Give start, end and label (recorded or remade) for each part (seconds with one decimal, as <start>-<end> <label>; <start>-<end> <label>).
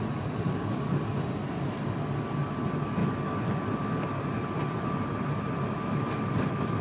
0.0-6.8 recorded